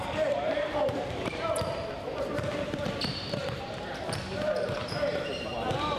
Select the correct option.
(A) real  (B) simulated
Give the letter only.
B